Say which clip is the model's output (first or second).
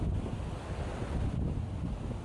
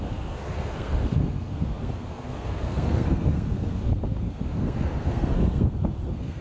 second